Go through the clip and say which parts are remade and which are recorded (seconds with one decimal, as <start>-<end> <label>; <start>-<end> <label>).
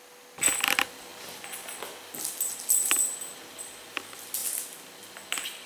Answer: 0.0-5.7 recorded